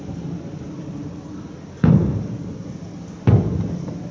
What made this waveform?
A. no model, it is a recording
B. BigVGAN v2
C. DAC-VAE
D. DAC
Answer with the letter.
A